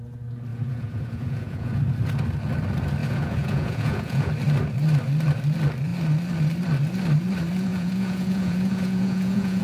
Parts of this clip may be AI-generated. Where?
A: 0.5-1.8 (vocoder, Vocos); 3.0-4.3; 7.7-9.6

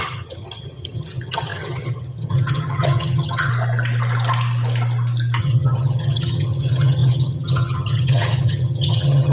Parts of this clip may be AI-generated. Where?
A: 0.0-3.5 (vocoder, HiFi-GAN); 5.4-9.3

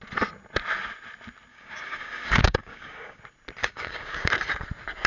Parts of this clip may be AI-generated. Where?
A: 1.5-3.2 (codec, DAC); 3.6-4.3